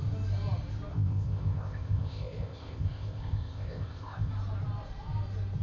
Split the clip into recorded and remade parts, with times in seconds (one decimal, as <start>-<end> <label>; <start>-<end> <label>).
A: 0.0-0.9 recorded; 0.9-4.3 remade; 4.3-5.6 recorded